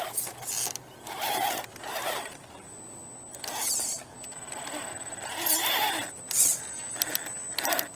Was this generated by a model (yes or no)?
no